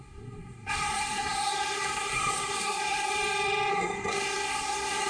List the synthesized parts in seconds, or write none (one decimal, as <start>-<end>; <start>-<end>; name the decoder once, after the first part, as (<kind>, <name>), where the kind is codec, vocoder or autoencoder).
0.0-3.1 (codec, SNAC); 3.7-5.1